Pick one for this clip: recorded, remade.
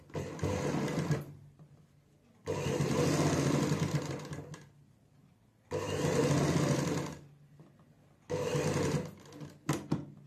recorded